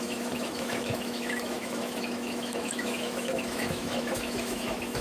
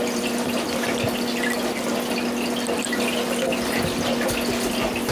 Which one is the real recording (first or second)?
second